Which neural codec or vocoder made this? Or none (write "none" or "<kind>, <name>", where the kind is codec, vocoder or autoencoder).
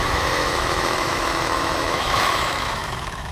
autoencoder, DAC-VAE